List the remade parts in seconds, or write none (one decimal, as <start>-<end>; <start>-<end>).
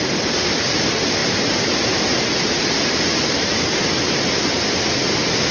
none